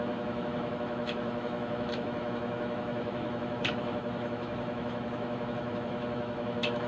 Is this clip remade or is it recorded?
remade